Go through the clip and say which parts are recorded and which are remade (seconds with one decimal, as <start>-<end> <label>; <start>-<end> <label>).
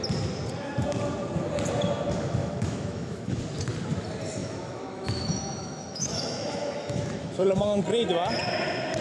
0.0-2.4 recorded; 2.4-3.4 remade; 3.4-4.4 recorded; 4.4-7.8 remade; 7.8-9.0 recorded